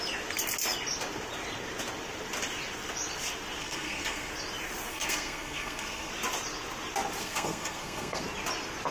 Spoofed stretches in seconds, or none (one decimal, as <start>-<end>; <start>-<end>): 3.6-4.3; 4.9-6.1; 7.2-8.2